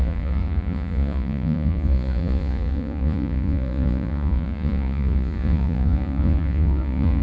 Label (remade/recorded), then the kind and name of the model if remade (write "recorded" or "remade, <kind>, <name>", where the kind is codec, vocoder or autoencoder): remade, vocoder, Vocos